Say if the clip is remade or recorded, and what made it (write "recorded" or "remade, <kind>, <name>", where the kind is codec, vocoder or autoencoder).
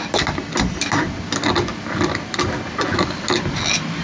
recorded